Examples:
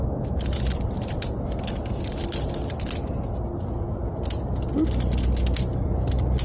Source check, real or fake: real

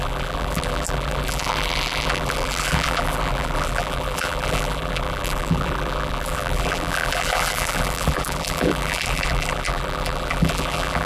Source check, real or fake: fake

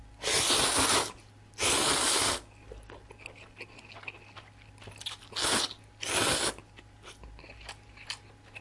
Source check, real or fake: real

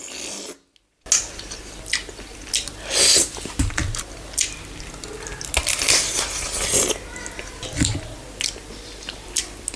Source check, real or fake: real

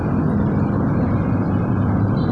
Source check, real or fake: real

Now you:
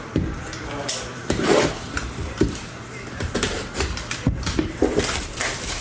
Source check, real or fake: fake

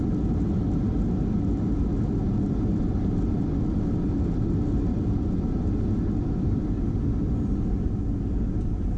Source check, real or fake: real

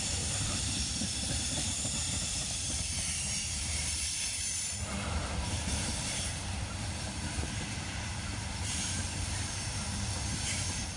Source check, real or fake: fake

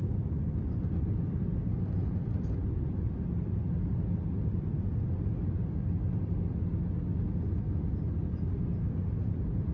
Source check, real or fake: real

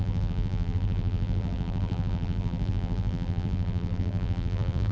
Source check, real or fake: fake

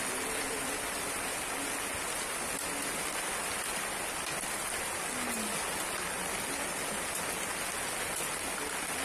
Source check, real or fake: real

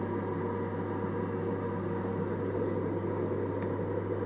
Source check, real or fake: real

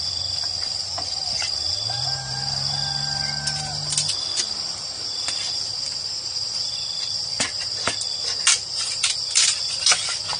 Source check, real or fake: real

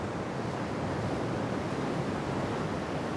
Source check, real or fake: real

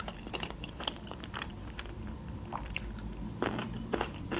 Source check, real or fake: fake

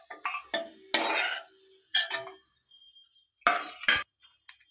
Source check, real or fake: real